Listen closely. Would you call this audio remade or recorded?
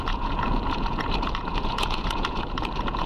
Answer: remade